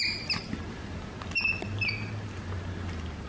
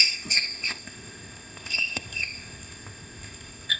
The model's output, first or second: second